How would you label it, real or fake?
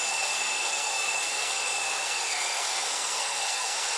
fake